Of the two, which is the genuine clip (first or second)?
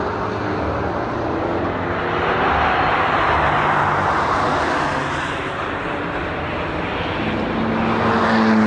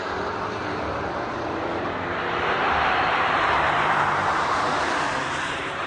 first